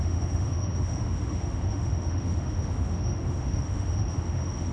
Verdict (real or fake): fake